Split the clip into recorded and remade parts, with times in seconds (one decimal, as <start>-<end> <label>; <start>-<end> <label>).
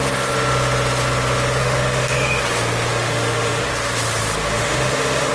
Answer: 0.0-1.6 recorded; 1.6-2.4 remade; 2.4-2.9 recorded; 2.9-3.6 remade; 3.6-4.4 recorded; 4.4-5.3 remade